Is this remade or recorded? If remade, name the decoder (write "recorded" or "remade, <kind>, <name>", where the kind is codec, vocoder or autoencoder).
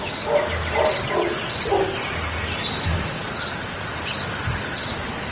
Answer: recorded